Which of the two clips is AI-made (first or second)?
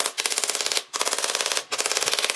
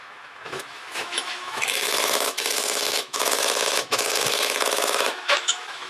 second